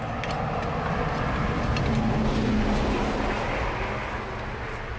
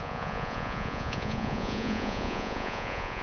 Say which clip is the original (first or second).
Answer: first